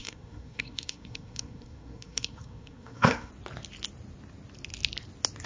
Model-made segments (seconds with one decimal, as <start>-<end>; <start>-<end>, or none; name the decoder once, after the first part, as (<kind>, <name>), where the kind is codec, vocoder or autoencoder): 0.0-3.3 (codec, SNAC)